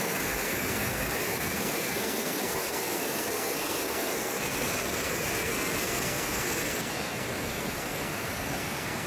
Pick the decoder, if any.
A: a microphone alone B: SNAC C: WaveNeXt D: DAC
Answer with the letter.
B